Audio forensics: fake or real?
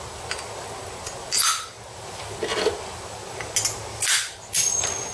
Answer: real